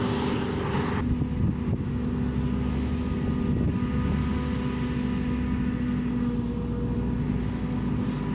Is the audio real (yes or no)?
yes